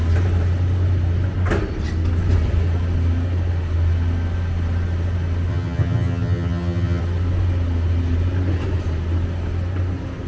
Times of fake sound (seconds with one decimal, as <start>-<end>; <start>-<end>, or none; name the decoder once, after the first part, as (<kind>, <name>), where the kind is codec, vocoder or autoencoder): 5.5-7.0 (vocoder, HiFi-GAN)